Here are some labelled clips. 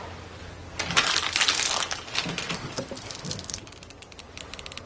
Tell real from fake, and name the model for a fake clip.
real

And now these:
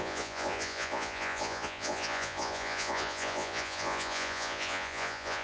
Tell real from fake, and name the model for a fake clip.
fake, vocoder, Vocos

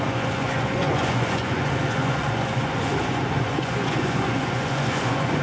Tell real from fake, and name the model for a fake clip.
fake, vocoder, Vocos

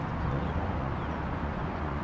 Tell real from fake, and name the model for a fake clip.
fake, vocoder, Vocos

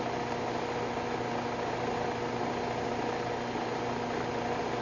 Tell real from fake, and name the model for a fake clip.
real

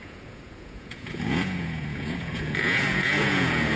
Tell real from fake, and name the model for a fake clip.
fake, vocoder, Vocos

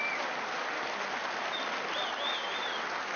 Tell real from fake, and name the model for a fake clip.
real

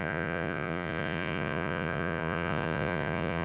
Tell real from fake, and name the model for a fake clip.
fake, vocoder, Vocos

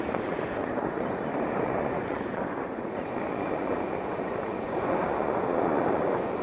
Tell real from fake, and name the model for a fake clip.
fake, vocoder, Vocos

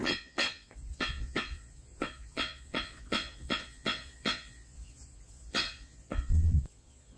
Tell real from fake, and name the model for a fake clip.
fake, vocoder, Vocos